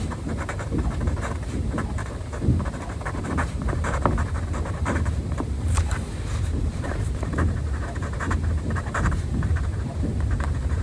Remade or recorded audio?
remade